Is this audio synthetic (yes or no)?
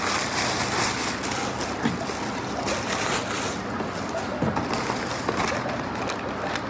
no